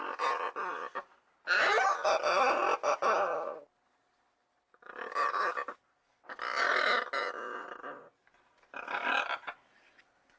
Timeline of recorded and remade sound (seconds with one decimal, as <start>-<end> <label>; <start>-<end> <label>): 0.0-10.4 recorded